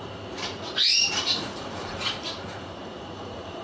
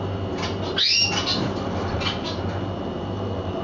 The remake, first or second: first